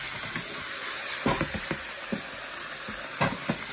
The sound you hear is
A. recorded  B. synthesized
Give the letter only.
A